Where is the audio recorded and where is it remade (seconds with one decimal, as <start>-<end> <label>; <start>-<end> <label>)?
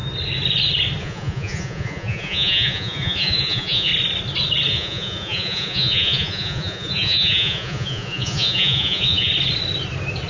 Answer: 0.0-1.0 recorded; 1.0-3.9 remade; 3.9-4.7 recorded; 4.7-9.3 remade; 9.3-10.3 recorded